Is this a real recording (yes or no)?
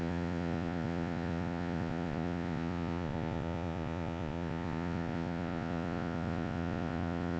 no